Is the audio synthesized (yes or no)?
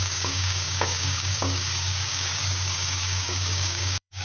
yes